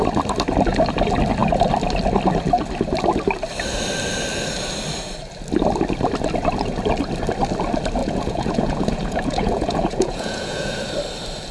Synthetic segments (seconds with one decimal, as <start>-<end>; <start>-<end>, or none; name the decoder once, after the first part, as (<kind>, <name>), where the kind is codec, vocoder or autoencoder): 8.0-10.8 (vocoder, Vocos)

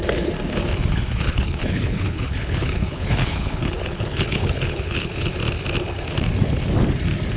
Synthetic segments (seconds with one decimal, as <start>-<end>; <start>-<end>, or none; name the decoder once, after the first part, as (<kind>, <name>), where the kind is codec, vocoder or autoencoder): 0.9-5.3 (codec, HILCodec)

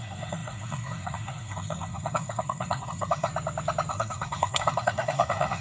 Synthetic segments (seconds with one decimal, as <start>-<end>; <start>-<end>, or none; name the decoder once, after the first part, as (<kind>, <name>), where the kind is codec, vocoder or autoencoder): 0.0-3.3 (codec, SNAC); 3.9-5.6

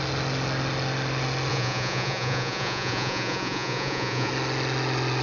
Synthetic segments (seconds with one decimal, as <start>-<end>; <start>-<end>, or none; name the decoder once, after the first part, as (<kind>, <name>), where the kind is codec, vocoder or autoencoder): 1.5-4.3 (vocoder, Vocos)